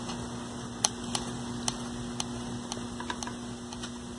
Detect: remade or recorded recorded